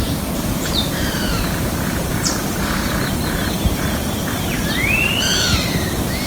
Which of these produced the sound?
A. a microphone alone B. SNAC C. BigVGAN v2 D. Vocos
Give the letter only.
C